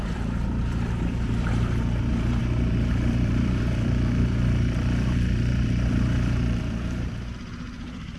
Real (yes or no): no